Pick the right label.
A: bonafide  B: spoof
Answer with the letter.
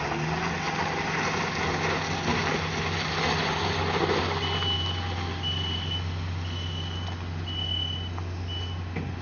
A